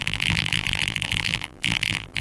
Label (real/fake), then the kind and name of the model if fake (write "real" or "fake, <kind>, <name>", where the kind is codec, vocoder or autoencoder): fake, vocoder, BigVGAN v2